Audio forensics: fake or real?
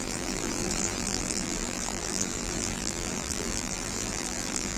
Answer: fake